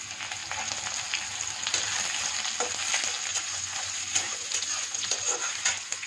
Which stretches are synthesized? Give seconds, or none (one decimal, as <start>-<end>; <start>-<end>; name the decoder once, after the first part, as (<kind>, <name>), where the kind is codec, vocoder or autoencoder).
3.3-6.1 (vocoder, Vocos)